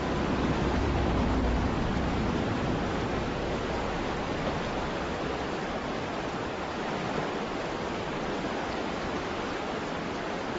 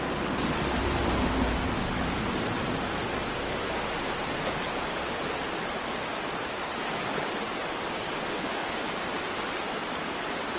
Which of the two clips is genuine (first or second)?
second